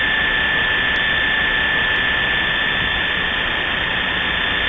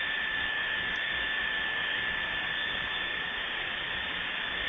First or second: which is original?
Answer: first